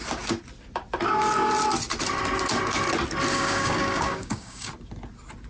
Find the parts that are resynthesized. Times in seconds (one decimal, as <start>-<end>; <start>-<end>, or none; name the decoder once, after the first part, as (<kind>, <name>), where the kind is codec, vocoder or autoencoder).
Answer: 3.3-4.7 (codec, DAC)

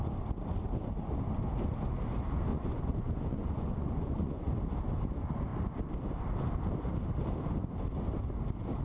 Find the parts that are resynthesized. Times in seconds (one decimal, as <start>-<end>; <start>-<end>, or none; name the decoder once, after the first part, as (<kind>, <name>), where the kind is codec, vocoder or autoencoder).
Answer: 2.5-4.5 (vocoder, Vocos)

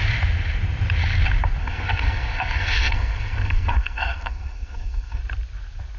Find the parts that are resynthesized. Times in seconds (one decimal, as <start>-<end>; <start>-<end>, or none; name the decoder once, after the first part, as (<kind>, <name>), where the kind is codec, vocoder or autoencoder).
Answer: 1.6-5.2 (codec, SNAC)